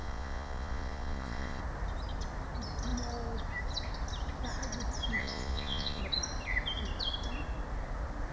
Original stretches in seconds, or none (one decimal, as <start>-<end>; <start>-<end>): 1.6-5.2; 6.0-8.3